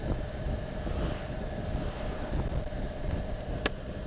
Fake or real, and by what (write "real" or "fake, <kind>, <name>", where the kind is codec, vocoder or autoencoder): real